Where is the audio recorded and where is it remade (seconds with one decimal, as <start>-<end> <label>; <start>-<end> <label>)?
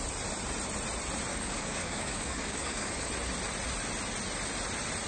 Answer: 0.0-1.3 recorded; 1.3-3.1 remade; 3.1-5.1 recorded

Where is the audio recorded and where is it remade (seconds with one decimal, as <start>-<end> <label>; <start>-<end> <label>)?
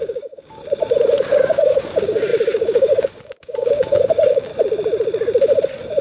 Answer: 0.0-0.6 remade; 0.6-1.2 recorded; 1.2-4.5 remade; 4.5-6.0 recorded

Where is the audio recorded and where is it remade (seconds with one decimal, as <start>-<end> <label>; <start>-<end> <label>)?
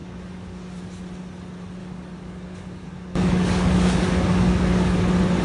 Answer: 0.0-0.8 remade; 0.8-1.8 recorded; 1.8-5.0 remade; 5.0-5.4 recorded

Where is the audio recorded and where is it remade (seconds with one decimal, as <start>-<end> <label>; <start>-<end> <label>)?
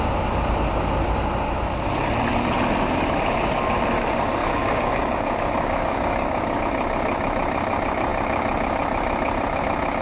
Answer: 0.0-4.4 recorded; 4.4-6.6 remade; 6.6-10.0 recorded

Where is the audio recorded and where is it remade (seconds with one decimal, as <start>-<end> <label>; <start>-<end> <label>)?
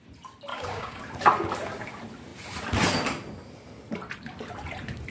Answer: 0.0-0.5 recorded; 0.5-1.0 remade; 1.0-5.1 recorded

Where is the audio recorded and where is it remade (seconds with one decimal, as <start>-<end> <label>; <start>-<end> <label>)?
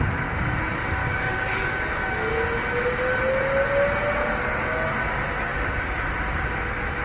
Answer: 0.0-1.0 recorded; 1.0-2.3 remade; 2.3-4.2 recorded; 4.2-4.9 remade; 4.9-7.0 recorded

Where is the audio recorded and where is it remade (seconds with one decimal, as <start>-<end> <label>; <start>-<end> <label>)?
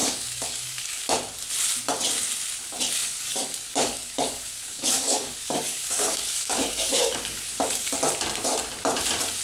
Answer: 0.0-1.0 remade; 1.0-3.0 recorded; 3.0-7.9 remade; 7.9-9.4 recorded